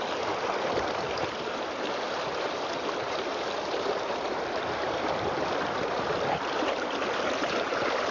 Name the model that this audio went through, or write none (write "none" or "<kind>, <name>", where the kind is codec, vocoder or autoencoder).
vocoder, BigVGAN v2